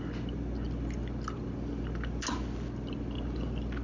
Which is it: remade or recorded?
recorded